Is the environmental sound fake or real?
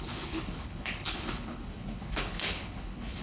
fake